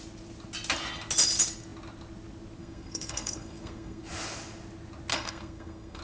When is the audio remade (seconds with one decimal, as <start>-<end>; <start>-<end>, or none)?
2.6-4.0; 5.1-6.0